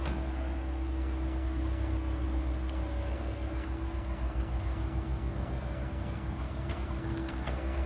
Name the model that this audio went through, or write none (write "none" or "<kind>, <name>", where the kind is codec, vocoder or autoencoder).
codec, SNAC